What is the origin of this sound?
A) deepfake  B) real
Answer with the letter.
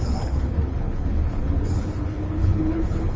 A